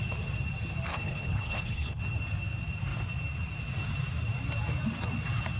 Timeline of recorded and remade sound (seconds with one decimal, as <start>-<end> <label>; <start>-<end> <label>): 0.0-0.9 recorded; 0.9-2.0 remade; 2.0-5.6 recorded